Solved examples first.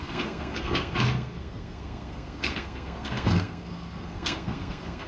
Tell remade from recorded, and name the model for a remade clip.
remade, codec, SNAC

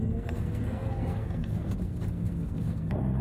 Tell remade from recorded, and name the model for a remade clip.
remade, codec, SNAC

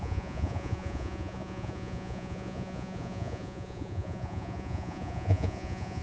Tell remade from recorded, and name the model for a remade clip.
remade, vocoder, Vocos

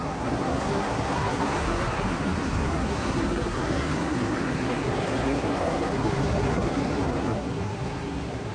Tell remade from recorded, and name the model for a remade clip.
remade, codec, SNAC